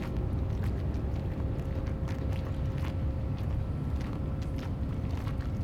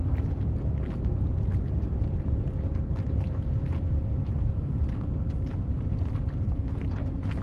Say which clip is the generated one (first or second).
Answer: second